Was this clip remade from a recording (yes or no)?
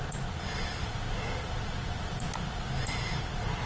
no